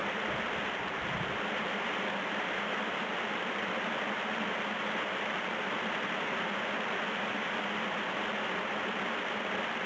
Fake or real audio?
real